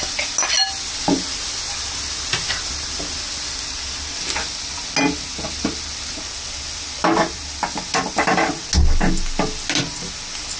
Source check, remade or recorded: recorded